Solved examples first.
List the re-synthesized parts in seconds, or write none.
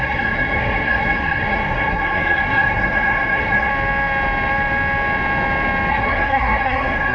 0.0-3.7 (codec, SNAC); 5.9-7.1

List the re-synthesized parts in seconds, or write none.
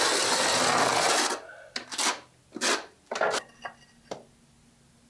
none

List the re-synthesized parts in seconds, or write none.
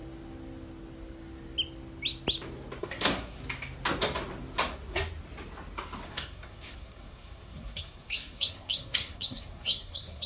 2.8-3.4 (codec, SNAC); 6.1-10.3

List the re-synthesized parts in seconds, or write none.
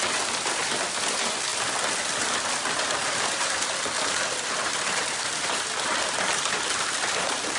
none